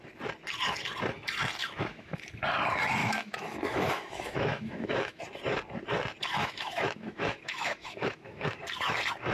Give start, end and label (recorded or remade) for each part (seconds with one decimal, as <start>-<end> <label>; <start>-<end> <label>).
0.0-1.6 recorded; 1.6-2.2 remade; 2.2-3.0 recorded; 3.0-5.2 remade; 5.2-6.4 recorded; 6.4-8.6 remade; 8.6-9.3 recorded